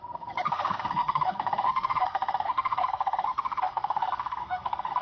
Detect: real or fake fake